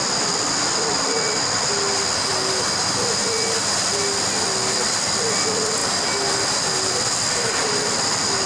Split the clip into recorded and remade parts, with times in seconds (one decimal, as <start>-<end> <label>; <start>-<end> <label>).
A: 0.0-8.5 recorded

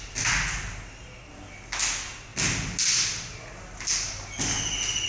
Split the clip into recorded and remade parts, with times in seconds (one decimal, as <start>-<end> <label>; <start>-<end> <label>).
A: 0.0-5.1 recorded

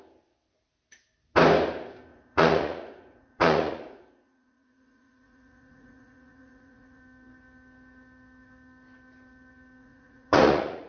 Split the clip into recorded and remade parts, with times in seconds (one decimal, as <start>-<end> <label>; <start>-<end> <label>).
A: 0.0-2.1 recorded; 2.1-7.0 remade; 7.0-9.8 recorded; 9.8-10.9 remade

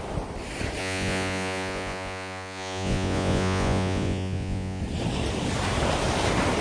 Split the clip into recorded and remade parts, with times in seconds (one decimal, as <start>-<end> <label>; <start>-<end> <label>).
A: 0.0-0.8 recorded; 0.8-4.8 remade; 4.8-6.6 recorded

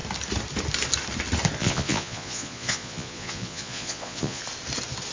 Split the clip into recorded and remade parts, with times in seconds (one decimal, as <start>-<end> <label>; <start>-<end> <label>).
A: 0.0-1.6 recorded; 1.6-4.4 remade; 4.4-5.1 recorded